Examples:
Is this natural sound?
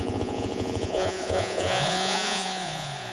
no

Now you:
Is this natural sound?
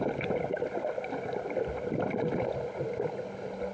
yes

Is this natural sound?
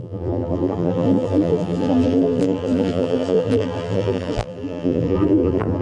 no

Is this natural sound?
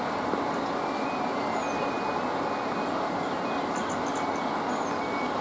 yes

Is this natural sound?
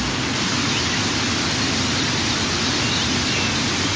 yes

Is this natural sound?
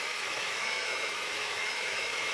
no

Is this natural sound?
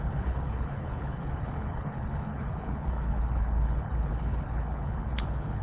no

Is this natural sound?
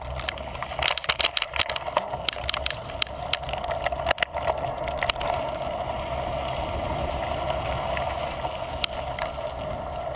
yes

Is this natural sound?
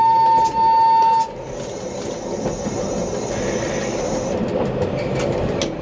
yes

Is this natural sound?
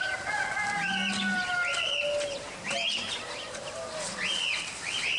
yes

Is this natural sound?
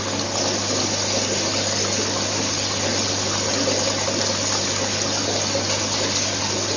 yes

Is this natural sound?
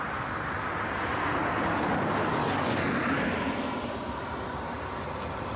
yes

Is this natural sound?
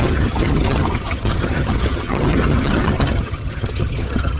no